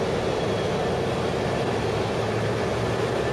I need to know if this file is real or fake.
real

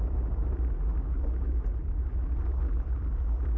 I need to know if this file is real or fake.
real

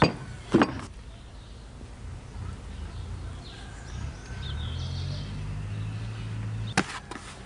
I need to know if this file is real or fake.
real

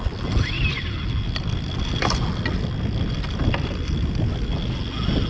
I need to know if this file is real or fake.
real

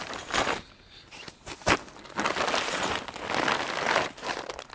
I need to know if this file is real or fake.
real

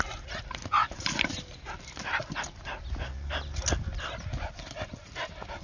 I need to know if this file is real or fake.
real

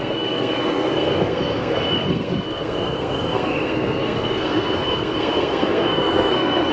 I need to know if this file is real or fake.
fake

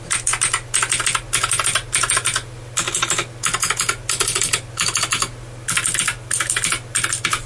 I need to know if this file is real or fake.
real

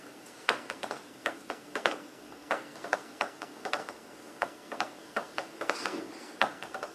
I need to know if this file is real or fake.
fake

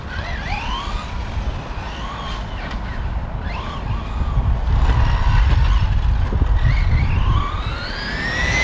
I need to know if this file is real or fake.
real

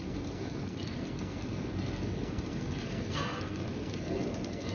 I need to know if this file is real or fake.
fake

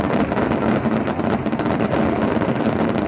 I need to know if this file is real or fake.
real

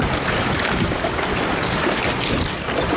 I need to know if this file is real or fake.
real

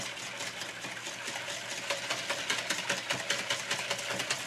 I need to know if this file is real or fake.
real